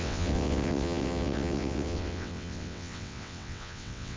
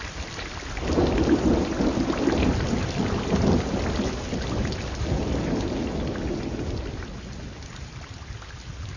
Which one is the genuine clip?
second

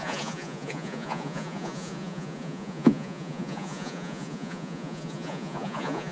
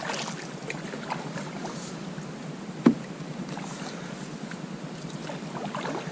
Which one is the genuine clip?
second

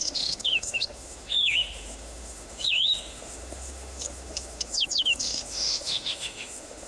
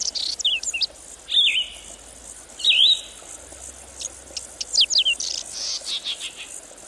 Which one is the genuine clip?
second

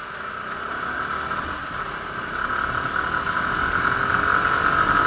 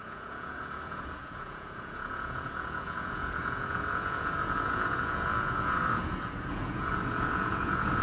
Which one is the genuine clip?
first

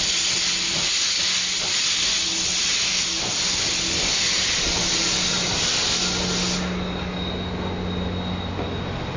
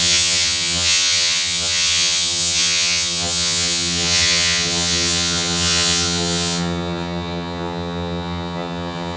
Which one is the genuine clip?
first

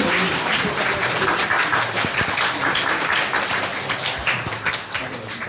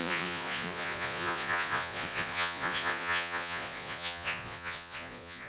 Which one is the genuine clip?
first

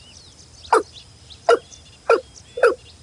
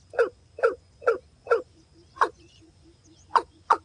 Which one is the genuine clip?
first